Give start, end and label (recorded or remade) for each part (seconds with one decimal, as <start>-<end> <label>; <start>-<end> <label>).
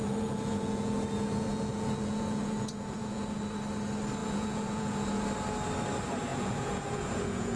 0.0-3.4 remade; 3.4-4.2 recorded; 4.2-5.2 remade; 5.2-6.3 recorded; 6.3-7.6 remade